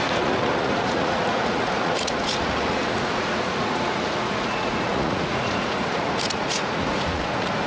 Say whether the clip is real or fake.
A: fake